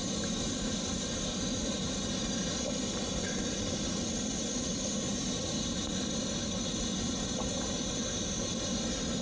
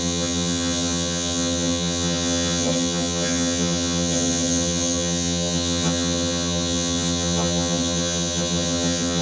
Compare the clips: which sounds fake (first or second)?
second